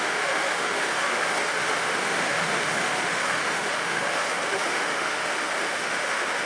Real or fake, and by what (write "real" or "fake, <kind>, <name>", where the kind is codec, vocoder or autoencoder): fake, autoencoder, DAC-VAE